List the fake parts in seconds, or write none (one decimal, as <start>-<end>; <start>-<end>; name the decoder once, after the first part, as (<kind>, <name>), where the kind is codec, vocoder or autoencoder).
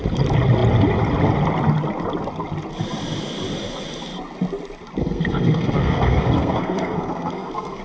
5.0-7.8 (codec, SNAC)